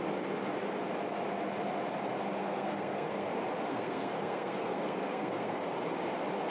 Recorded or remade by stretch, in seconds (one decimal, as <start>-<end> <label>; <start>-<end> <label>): 0.0-2.4 recorded; 2.4-3.3 remade; 3.3-3.7 recorded; 3.7-5.7 remade; 5.7-6.5 recorded